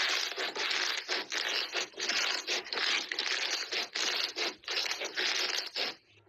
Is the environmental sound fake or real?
real